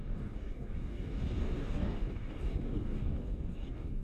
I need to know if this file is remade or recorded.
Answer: remade